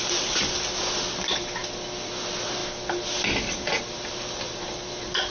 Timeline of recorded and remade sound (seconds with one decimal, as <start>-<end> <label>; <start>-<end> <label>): 0.0-5.3 recorded